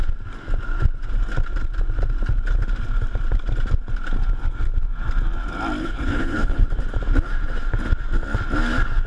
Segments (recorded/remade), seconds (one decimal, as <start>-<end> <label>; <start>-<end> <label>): 0.0-5.8 recorded; 5.8-6.7 remade; 6.7-9.1 recorded